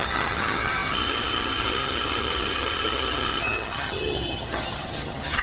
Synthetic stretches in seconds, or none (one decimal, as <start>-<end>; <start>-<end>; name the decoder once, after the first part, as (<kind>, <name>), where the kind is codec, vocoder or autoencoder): 0.0-5.4 (vocoder, HiFi-GAN)